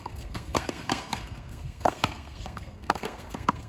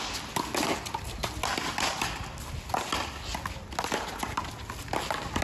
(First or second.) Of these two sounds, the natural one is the second